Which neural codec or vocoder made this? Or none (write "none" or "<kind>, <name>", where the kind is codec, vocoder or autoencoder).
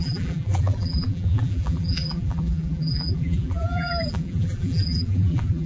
vocoder, BigVGAN v2